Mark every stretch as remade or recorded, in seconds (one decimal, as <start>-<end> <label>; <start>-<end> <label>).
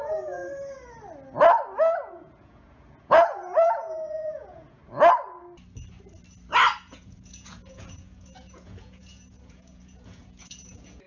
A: 0.0-0.4 remade; 0.4-2.1 recorded; 2.1-4.8 remade; 4.8-6.8 recorded; 6.8-11.1 remade